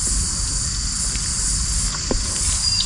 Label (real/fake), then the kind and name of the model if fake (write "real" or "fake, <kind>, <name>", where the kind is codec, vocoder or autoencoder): real